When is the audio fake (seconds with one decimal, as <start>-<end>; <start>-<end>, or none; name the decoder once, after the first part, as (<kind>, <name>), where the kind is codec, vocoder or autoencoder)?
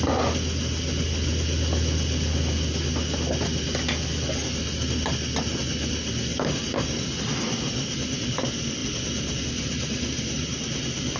none